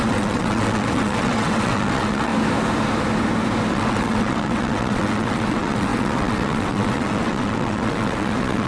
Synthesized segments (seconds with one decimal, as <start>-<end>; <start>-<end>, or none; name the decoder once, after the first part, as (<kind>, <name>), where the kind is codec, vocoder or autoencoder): 0.0-2.3 (vocoder, WaveNeXt); 3.7-8.7